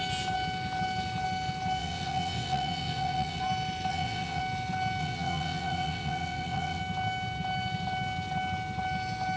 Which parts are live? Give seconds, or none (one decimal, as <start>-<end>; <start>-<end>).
0.0-1.8; 3.4-3.9; 4.4-5.0; 6.8-9.4